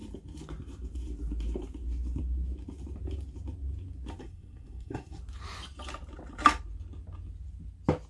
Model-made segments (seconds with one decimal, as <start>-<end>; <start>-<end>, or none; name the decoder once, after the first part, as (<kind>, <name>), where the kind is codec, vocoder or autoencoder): 4.2-5.2 (codec, SNAC)